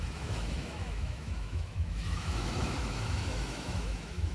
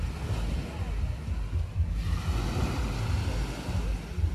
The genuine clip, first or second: second